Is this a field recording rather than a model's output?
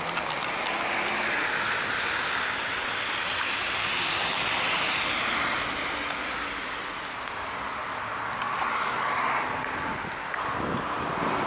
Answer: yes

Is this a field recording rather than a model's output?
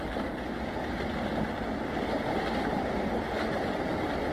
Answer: yes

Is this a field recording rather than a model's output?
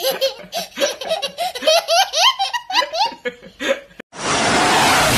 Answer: yes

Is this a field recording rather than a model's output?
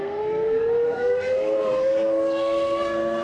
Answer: no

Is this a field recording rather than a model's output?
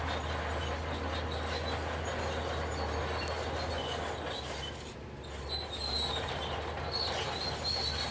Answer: yes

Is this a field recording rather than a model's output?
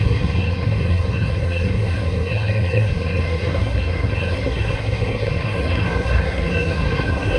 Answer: no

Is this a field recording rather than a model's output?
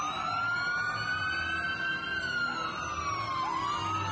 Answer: yes